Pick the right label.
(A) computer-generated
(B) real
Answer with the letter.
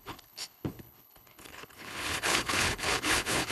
A